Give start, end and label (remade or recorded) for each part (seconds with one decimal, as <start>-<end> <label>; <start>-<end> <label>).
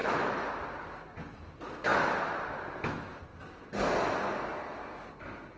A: 0.0-0.5 remade; 0.5-5.6 recorded